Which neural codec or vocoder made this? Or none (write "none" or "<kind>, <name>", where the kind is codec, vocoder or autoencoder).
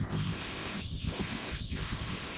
codec, ZipCodec